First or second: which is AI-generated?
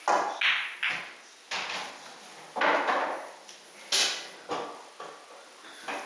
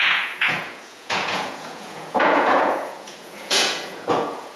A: second